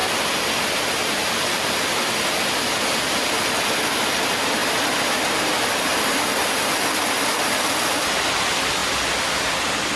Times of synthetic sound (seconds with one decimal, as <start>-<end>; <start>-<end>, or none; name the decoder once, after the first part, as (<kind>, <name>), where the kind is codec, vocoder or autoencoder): 4.6-8.0 (vocoder, BigVGAN v2)